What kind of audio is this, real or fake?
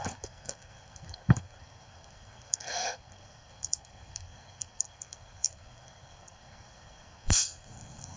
fake